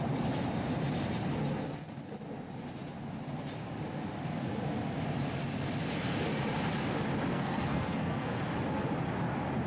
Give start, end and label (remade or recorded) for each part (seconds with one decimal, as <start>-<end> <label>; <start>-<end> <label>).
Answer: 0.0-7.3 recorded; 7.3-8.4 remade; 8.4-9.7 recorded